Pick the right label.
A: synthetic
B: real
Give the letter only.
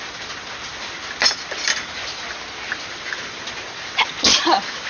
B